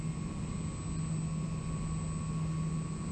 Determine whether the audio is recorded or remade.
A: recorded